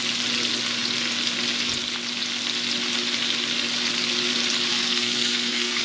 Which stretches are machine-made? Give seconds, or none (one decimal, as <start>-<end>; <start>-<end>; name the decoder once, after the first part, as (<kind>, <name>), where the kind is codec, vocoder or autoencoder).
4.7-5.8 (codec, SNAC)